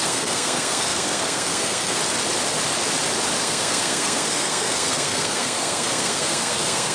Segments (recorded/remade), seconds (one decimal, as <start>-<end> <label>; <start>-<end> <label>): 0.0-2.0 remade; 2.0-3.4 recorded; 3.4-6.9 remade

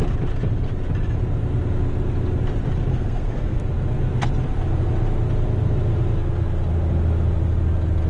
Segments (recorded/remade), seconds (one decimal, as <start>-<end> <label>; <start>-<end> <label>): 0.0-2.9 recorded; 2.9-3.6 remade; 3.6-8.1 recorded

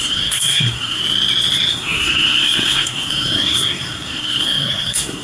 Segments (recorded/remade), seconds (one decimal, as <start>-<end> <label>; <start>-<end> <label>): 0.0-1.0 remade; 1.0-1.7 recorded; 1.7-5.2 remade